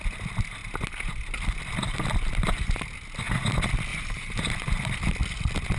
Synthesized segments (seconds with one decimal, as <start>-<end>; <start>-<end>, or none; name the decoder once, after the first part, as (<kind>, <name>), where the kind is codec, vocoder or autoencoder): 3.9-4.5 (vocoder, BigVGAN v2)